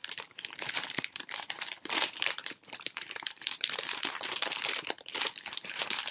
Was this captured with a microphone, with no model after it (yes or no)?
no